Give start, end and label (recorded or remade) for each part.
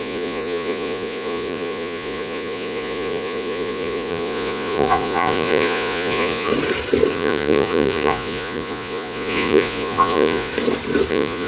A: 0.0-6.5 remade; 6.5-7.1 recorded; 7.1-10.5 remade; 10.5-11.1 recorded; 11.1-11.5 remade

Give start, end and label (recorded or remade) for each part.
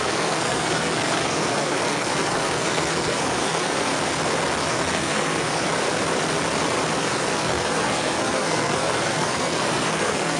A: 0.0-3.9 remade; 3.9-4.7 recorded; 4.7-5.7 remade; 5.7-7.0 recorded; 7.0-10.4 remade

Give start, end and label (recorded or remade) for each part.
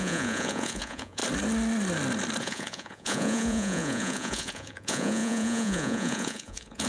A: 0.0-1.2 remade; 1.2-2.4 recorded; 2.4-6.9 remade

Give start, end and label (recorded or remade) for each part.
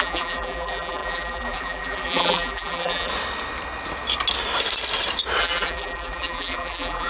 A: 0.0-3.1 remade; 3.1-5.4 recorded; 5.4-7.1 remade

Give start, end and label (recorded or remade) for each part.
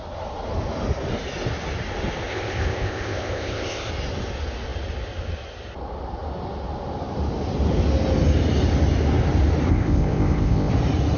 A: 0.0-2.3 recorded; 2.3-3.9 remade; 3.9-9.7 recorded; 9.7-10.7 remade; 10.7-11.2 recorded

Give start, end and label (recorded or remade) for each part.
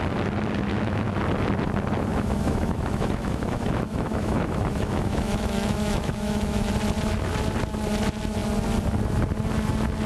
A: 0.0-0.7 recorded; 0.7-1.2 remade; 1.2-2.1 recorded; 2.1-6.7 remade; 6.7-10.1 recorded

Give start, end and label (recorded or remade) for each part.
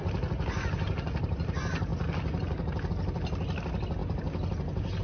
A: 0.0-5.0 recorded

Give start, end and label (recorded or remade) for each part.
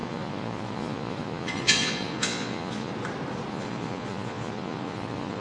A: 0.0-2.9 remade; 2.9-3.5 recorded; 3.5-5.4 remade